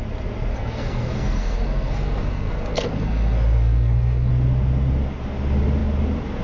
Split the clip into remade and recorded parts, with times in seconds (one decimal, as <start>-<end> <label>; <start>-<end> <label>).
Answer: 0.0-0.5 recorded; 0.5-4.3 remade; 4.3-6.4 recorded